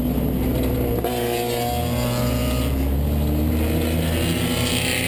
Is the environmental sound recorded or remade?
recorded